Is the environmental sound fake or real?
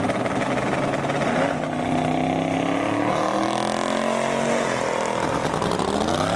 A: real